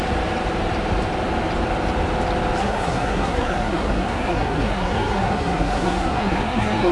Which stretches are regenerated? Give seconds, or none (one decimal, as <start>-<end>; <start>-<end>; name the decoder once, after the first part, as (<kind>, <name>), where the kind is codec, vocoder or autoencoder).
2.6-6.9 (codec, SNAC)

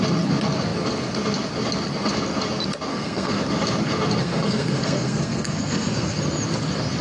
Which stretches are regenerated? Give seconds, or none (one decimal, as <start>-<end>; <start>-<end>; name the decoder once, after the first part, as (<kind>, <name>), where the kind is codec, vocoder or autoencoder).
2.9-3.4 (codec, SNAC); 4.2-6.2

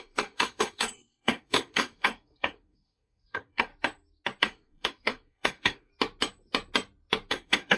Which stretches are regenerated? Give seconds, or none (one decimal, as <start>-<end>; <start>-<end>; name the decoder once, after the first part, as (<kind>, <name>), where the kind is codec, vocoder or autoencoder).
0.0-3.7 (codec, SNAC); 4.4-5.9; 7.3-7.8

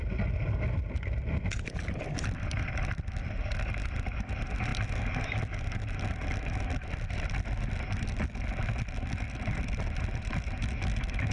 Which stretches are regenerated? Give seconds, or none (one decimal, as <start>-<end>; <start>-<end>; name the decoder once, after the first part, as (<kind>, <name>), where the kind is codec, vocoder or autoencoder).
none

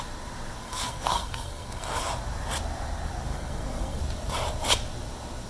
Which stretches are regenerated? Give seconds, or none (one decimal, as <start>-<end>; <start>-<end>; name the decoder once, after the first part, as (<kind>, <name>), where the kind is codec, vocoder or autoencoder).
0.6-2.0 (codec, SNAC); 3.3-4.0